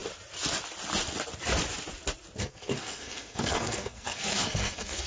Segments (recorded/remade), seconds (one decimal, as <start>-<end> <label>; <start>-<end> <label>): 0.0-2.4 recorded; 2.4-5.1 remade

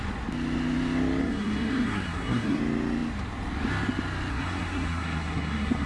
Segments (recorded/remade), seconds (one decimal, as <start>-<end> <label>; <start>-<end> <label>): 0.0-1.2 recorded; 1.2-2.6 remade; 2.6-4.3 recorded; 4.3-5.9 remade

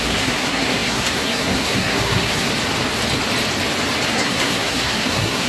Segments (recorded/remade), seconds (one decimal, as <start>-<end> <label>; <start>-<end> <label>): 0.0-2.5 remade; 2.5-4.1 recorded; 4.1-5.5 remade

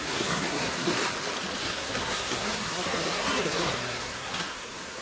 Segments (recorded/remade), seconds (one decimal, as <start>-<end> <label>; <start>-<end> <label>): 0.0-0.9 remade; 0.9-1.6 recorded; 1.6-5.0 remade

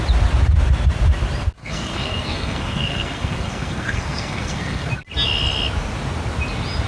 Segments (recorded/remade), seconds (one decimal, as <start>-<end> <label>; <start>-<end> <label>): 0.0-1.6 recorded; 1.6-4.9 remade; 4.9-6.9 recorded

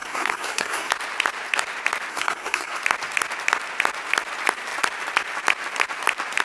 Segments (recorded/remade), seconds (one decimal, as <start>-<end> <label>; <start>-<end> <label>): 0.0-0.9 remade; 0.9-2.1 recorded; 2.1-2.8 remade; 2.8-6.4 recorded

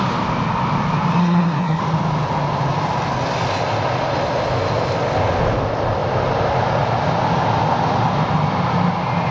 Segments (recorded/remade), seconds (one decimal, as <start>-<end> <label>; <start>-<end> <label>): 0.0-1.2 recorded; 1.2-1.8 remade; 1.8-9.3 recorded

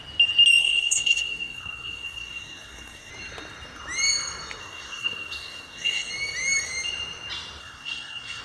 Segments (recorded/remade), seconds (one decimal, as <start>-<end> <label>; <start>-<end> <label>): 0.0-0.6 recorded; 0.6-3.1 remade; 3.1-4.6 recorded; 4.6-6.1 remade; 6.1-7.6 recorded; 7.6-8.4 remade